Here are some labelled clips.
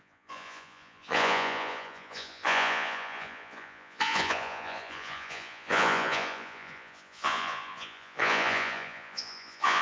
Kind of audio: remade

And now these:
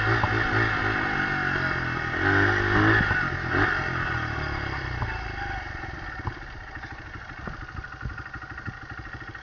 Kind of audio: recorded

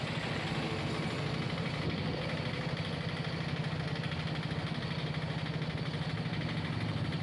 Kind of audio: recorded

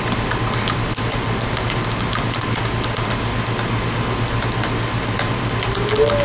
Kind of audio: recorded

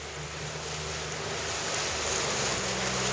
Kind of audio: recorded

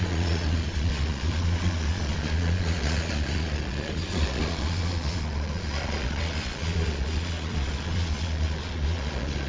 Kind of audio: remade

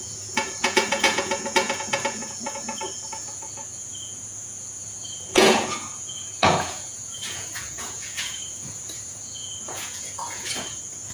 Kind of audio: remade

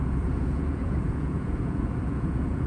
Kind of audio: remade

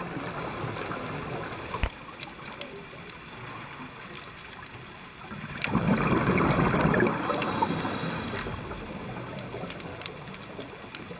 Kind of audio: recorded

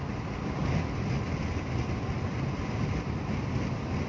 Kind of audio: recorded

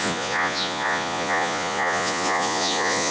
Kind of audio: remade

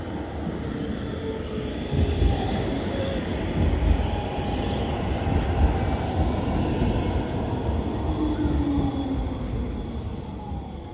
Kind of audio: recorded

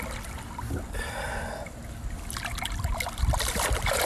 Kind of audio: recorded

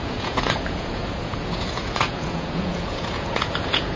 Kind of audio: remade